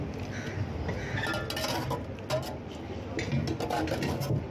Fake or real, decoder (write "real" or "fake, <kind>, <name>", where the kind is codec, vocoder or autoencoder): real